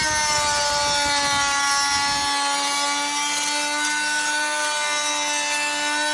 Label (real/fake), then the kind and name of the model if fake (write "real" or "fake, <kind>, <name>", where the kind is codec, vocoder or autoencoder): real